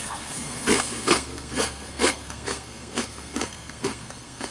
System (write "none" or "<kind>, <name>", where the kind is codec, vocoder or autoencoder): codec, SNAC